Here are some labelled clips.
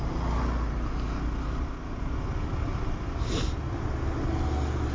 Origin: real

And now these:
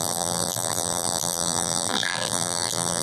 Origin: fake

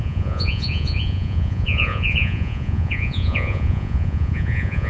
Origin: fake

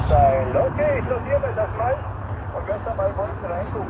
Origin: real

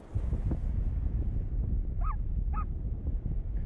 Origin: real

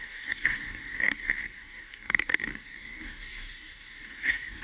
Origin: fake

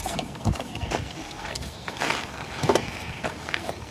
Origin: fake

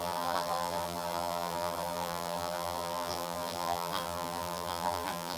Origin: fake